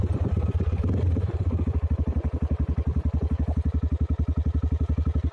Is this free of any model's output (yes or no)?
yes